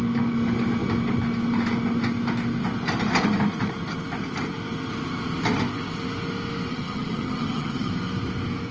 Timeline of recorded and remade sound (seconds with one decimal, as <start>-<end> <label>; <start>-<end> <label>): 0.0-6.7 recorded; 6.7-7.9 remade; 7.9-8.7 recorded